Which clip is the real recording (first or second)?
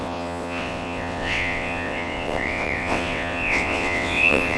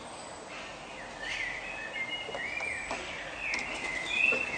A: second